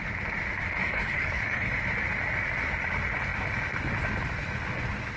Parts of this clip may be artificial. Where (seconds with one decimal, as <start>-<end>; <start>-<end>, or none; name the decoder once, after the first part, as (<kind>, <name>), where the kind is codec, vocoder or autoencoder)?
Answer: 0.8-1.7 (codec, HILCodec)